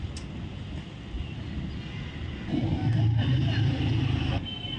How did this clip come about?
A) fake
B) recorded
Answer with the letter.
B